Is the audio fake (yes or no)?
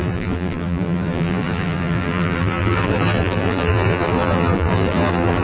yes